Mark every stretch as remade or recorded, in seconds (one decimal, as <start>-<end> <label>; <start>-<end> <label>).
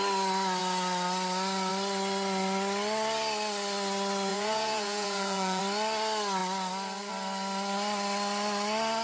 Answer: 0.0-4.3 recorded; 4.3-5.6 remade; 5.6-9.0 recorded